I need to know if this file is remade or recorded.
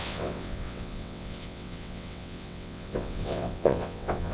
remade